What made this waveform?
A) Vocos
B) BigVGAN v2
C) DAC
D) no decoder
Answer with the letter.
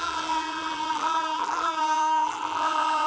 B